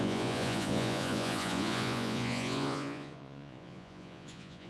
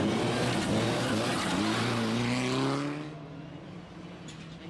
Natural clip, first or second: second